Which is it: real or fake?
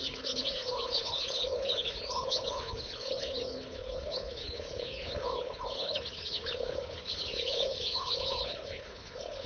fake